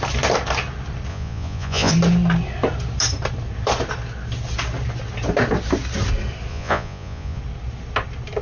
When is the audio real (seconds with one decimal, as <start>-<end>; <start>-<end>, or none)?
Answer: 0.0-1.1; 1.9-6.5; 7.4-8.4